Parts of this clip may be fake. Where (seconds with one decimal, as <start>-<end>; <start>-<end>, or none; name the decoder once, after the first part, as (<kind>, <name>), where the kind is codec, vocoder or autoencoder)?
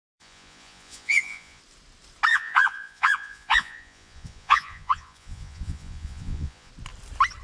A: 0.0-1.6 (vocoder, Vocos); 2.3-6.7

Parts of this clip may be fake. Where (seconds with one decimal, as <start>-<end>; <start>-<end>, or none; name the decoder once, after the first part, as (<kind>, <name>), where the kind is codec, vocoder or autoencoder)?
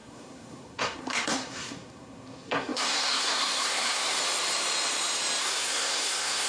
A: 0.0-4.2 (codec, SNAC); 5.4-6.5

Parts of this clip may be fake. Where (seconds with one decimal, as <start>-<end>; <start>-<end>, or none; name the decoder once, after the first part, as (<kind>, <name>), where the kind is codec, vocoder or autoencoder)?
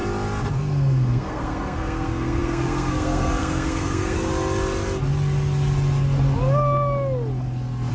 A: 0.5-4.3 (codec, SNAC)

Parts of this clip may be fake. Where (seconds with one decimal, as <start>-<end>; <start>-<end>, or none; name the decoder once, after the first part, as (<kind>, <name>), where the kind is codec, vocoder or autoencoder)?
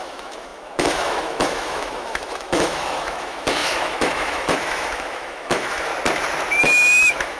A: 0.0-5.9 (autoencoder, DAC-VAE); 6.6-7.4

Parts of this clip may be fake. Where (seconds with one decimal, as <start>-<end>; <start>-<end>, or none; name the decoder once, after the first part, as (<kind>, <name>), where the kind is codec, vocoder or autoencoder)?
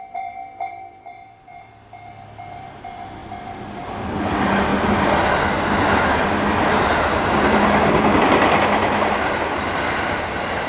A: none